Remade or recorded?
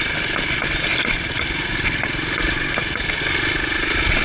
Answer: recorded